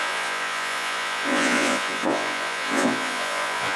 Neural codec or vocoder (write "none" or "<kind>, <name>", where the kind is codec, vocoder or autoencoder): vocoder, Vocos